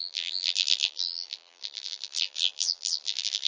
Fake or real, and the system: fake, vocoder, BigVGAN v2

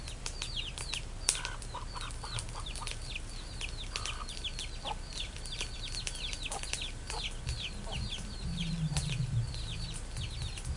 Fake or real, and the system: fake, vocoder, BigVGAN v2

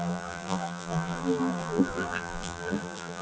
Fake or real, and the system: fake, vocoder, BigVGAN v2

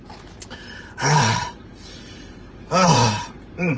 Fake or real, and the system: fake, vocoder, BigVGAN v2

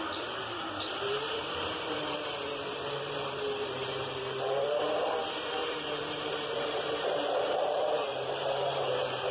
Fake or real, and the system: fake, vocoder, BigVGAN v2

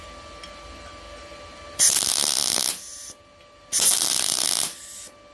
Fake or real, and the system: real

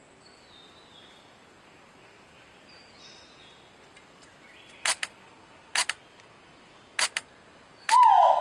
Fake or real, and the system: real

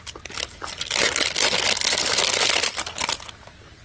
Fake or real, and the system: real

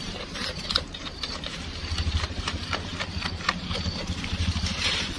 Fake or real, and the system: fake, vocoder, BigVGAN v2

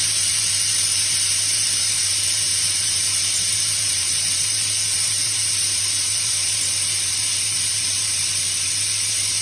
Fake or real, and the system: fake, vocoder, BigVGAN v2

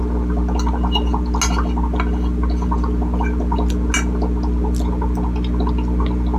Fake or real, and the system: real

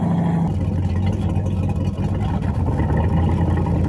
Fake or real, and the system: real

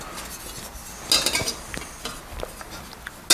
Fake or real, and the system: real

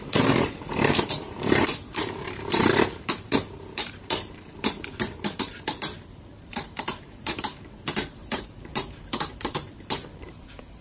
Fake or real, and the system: fake, vocoder, BigVGAN v2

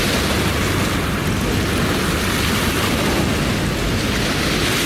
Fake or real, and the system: real